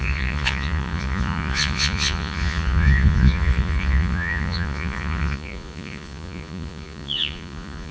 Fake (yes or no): yes